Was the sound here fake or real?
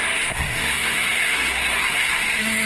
fake